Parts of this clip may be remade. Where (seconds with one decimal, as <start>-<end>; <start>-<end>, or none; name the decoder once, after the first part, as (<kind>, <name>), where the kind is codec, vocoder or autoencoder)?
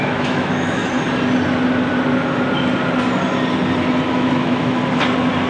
0.0-0.8 (autoencoder, DAC-VAE); 4.1-4.8